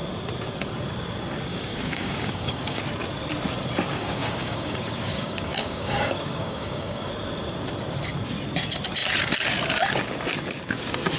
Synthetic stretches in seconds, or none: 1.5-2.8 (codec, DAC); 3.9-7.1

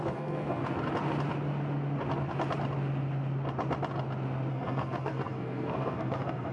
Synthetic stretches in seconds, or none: 0.0-0.6 (codec, SNAC); 4.5-6.5

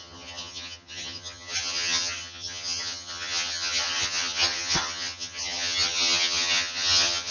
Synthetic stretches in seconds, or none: 0.0-7.3 (vocoder, HiFi-GAN)

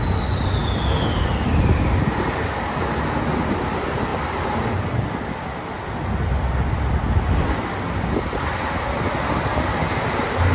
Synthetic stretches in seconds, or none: none

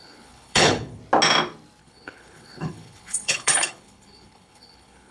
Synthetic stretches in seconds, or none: 0.0-1.0 (codec, HILCodec); 1.8-5.1